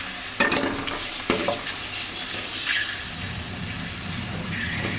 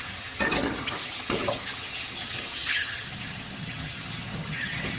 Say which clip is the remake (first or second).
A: second